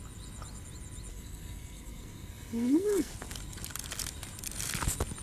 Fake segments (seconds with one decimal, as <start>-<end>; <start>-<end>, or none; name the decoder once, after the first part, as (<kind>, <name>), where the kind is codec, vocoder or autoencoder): 1.1-3.1 (codec, SNAC)